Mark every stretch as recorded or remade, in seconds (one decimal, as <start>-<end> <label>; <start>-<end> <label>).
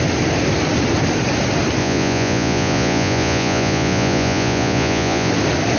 0.0-1.8 recorded; 1.8-5.3 remade; 5.3-5.8 recorded